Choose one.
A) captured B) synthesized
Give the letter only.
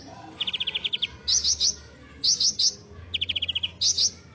A